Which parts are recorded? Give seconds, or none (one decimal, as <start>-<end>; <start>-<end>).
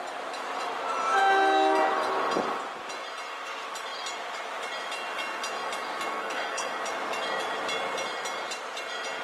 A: 0.0-6.1; 6.7-9.2